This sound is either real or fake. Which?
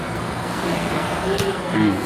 fake